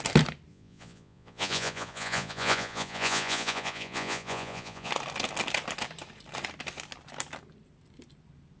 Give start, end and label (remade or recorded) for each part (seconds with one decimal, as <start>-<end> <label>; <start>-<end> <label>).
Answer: 0.0-0.5 recorded; 0.5-4.9 remade; 4.9-8.6 recorded